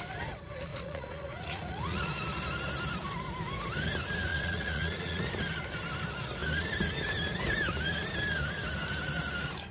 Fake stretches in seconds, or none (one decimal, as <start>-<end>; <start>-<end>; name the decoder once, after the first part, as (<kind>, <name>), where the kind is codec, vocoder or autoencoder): 0.7-2.1 (vocoder, Vocos); 4.3-5.2

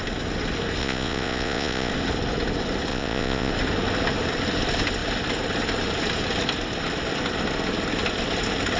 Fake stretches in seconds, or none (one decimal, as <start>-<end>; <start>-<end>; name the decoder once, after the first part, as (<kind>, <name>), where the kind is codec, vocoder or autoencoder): 0.8-1.9 (vocoder, Vocos); 2.9-3.5

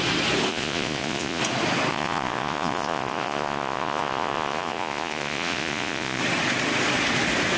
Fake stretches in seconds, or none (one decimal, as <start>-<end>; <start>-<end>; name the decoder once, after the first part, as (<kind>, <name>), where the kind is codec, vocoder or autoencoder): 0.5-1.4 (vocoder, Vocos); 1.9-6.2

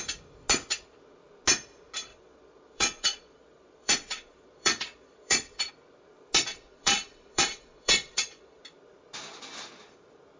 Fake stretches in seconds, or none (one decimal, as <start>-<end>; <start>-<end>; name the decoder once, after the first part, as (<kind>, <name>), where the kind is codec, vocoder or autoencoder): 2.1-5.7 (vocoder, Vocos); 6.5-8.6

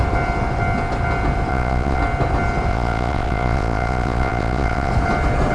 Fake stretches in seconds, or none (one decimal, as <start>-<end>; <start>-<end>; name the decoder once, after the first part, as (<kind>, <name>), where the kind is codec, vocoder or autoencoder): 1.5-2.0 (vocoder, Vocos); 2.7-4.9

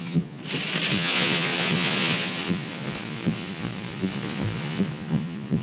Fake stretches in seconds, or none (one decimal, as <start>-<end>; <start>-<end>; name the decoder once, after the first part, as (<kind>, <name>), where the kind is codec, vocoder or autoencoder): 0.0-0.4 (vocoder, Vocos); 0.9-5.6

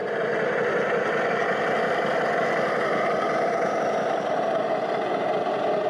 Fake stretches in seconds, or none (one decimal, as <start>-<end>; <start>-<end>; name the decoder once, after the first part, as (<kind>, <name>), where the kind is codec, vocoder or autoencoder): none